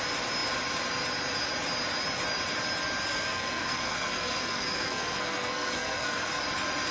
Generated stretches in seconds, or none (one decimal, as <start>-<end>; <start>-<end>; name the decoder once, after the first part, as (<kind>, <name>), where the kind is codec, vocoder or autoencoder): 3.1-6.4 (codec, SNAC)